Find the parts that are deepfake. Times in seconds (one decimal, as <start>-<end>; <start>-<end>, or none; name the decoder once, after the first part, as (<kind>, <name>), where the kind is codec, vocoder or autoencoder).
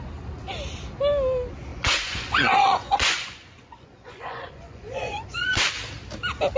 1.7-5.7 (vocoder, Vocos)